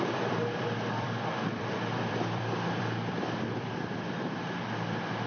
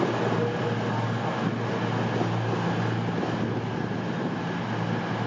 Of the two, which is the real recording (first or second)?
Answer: second